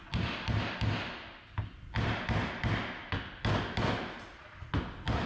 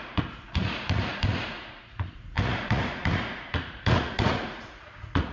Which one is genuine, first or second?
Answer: first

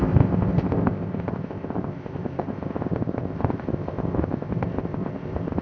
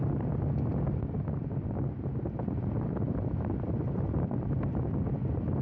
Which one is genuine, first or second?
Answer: second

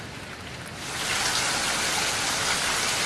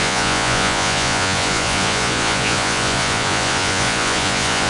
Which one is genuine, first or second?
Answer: first